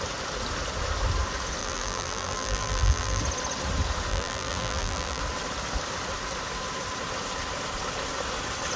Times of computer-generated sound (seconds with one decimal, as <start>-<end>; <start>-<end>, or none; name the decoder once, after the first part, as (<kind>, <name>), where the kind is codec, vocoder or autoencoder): 1.6-3.2 (vocoder, BigVGAN v2); 4.1-5.2